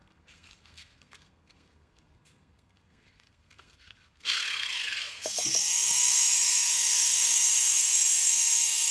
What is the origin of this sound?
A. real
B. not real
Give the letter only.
B